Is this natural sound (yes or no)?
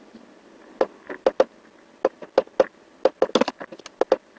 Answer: yes